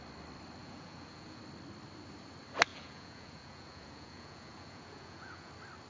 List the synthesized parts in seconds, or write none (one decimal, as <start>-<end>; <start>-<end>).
0.6-1.4; 2.7-5.5